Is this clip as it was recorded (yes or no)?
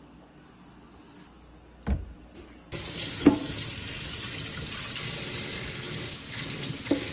yes